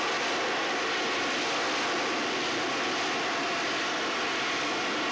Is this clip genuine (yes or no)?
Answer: yes